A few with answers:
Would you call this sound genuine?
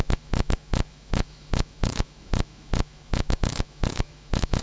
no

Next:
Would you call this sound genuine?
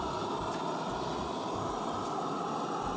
yes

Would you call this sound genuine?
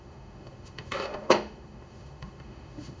no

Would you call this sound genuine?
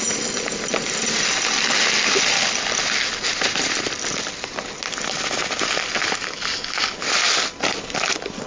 yes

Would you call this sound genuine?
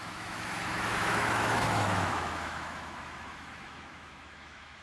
no